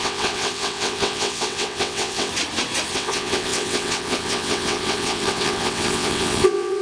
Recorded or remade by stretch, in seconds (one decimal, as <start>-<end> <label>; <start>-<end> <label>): 0.0-2.3 remade; 2.3-2.9 recorded; 2.9-6.8 remade